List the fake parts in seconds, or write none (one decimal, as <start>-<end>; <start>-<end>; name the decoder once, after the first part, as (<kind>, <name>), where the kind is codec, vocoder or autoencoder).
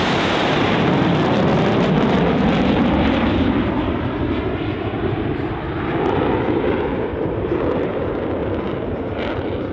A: 0.0-8.4 (vocoder, BigVGAN v2); 8.9-9.7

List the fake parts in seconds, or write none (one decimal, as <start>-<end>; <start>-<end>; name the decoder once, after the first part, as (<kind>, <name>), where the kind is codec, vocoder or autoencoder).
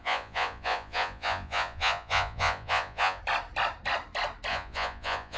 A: 0.0-3.2 (vocoder, Vocos); 4.5-5.4